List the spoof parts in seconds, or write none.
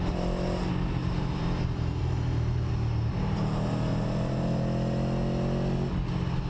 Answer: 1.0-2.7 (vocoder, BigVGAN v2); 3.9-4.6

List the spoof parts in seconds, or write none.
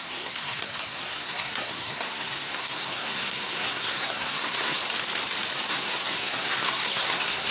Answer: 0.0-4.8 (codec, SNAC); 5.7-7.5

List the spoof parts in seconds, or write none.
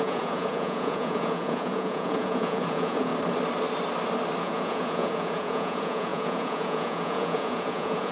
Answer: 0.0-3.1 (vocoder, Vocos); 4.4-8.1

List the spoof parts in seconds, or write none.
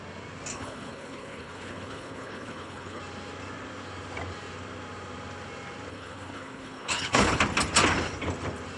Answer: 0.5-3.0 (codec, HILCodec); 5.9-7.4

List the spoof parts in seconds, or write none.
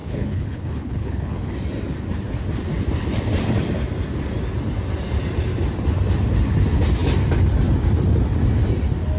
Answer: 0.0-1.5 (codec, HILCodec)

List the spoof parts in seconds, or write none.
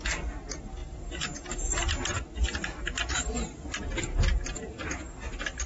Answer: none